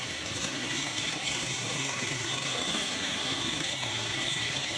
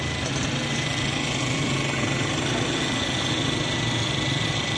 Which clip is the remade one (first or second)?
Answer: first